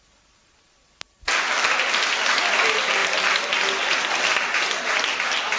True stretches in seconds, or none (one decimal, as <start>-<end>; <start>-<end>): 0.0-5.6